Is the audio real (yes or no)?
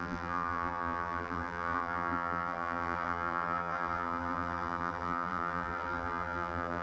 no